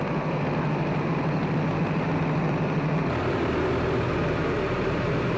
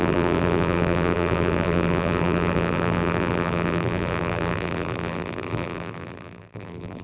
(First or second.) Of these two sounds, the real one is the first